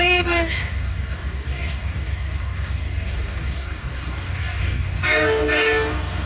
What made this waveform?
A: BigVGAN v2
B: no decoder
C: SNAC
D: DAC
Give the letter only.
D